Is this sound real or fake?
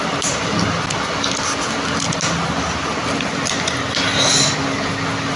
real